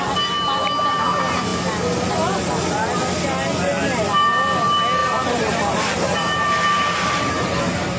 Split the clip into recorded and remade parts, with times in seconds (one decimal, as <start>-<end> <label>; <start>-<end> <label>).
0.0-5.0 recorded; 5.0-7.6 remade; 7.6-8.0 recorded